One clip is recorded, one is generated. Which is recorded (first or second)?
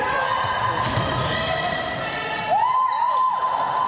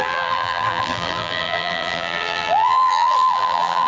first